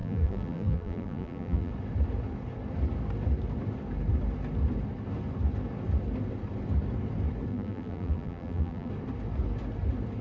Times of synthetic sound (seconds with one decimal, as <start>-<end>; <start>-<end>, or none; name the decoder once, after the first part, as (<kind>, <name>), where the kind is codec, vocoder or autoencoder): 0.0-1.7 (vocoder, BigVGAN v2); 7.5-8.9